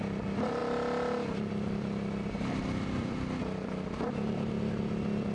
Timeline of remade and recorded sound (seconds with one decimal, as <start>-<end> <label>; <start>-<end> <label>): 0.0-5.3 recorded